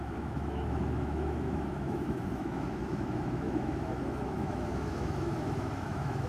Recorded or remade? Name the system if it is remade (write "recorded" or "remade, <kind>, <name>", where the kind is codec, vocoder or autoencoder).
remade, autoencoder, DAC-VAE